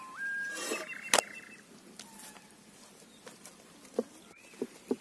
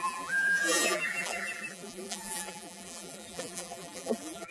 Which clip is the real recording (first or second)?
first